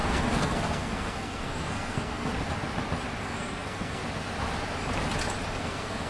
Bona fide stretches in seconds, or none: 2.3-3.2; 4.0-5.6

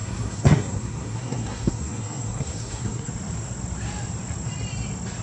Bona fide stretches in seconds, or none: 3.1-5.2

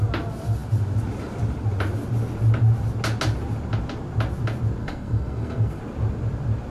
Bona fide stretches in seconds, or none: 0.0-4.8; 5.8-6.7

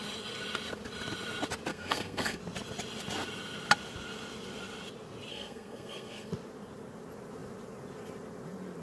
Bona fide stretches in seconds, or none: 0.0-1.7; 2.4-5.3; 6.3-8.8

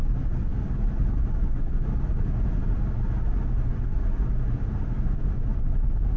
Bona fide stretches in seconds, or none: 0.0-6.2